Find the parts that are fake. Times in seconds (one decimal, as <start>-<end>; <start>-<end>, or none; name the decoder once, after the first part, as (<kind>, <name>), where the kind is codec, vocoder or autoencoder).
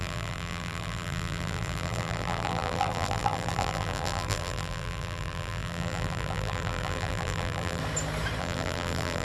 0.0-7.8 (vocoder, BigVGAN v2); 8.4-9.2